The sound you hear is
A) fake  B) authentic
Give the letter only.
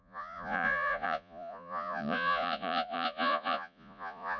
A